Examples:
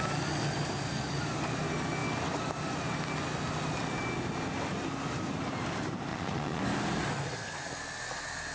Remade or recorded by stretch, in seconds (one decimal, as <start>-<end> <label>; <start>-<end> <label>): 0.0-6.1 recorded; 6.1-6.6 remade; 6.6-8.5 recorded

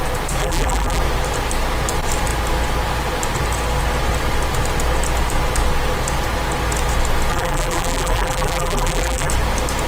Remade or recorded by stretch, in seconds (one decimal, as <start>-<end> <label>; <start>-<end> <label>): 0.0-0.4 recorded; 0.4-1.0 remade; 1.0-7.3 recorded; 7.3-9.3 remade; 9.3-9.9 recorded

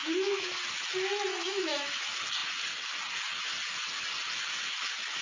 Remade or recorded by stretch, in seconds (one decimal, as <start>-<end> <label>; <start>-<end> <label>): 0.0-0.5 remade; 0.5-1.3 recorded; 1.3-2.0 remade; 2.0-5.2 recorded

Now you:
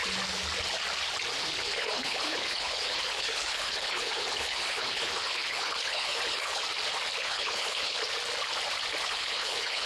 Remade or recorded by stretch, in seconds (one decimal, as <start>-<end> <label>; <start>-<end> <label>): 0.0-1.4 recorded; 1.4-6.6 remade; 6.6-7.2 recorded; 7.2-8.0 remade; 8.0-9.0 recorded; 9.0-9.9 remade

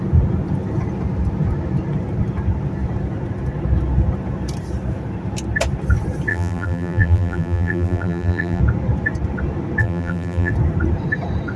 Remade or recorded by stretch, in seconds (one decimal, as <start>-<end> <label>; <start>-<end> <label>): 0.0-6.3 recorded; 6.3-8.6 remade; 8.6-9.8 recorded; 9.8-10.5 remade; 10.5-11.6 recorded